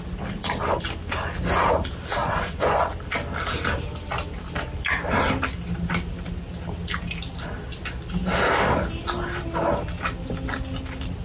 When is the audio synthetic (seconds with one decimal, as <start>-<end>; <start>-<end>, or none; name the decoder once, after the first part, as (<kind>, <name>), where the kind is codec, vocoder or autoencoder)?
2.2-2.8 (vocoder, Vocos)